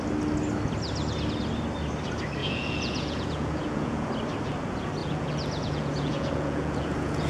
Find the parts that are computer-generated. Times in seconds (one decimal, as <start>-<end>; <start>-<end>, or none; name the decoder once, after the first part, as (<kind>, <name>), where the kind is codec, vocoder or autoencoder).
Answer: 2.4-4.1 (vocoder, Vocos); 5.0-7.3